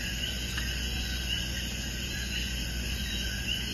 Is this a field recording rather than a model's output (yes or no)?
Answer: no